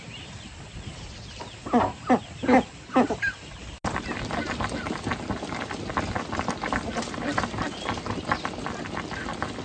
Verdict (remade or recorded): recorded